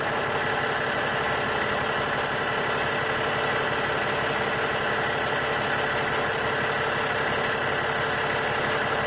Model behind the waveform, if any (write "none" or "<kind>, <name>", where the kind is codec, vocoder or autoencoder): none